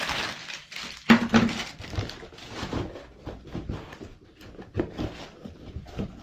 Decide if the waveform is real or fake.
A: real